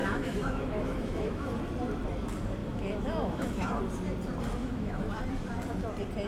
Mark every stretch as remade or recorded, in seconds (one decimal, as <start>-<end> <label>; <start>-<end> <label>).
0.0-1.5 remade; 1.5-2.6 recorded; 2.6-3.8 remade; 3.8-4.6 recorded; 4.6-5.2 remade; 5.2-6.3 recorded